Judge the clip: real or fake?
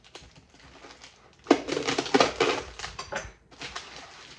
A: real